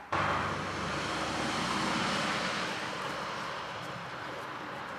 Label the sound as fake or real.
real